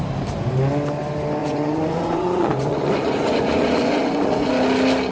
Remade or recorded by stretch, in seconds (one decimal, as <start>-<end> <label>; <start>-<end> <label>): 0.0-1.4 recorded; 1.4-4.5 remade; 4.5-5.1 recorded